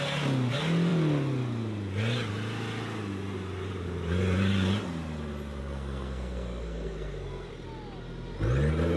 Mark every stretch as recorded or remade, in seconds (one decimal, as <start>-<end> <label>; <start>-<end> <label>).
0.0-5.6 recorded; 5.6-7.5 remade; 7.5-9.0 recorded